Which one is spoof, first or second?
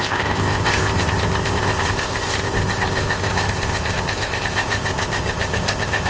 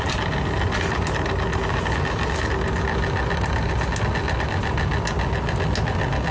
first